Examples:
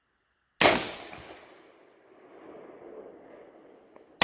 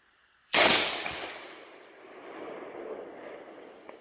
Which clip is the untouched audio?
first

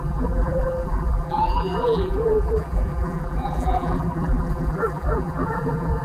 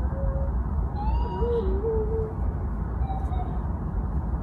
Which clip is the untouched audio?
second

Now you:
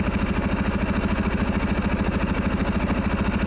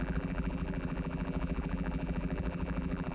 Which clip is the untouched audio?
first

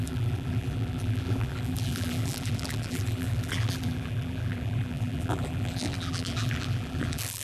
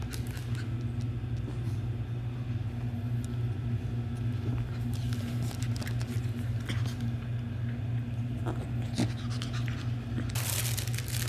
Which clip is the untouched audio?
second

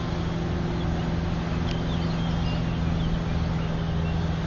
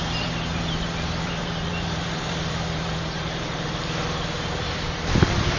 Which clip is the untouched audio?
first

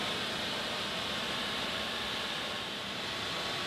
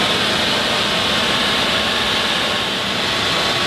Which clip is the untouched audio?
second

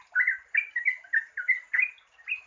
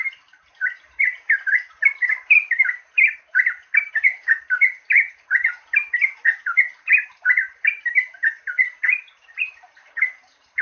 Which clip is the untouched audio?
first